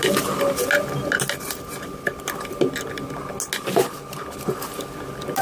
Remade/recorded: recorded